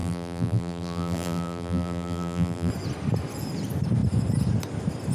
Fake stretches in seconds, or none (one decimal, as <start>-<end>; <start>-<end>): 0.0-2.7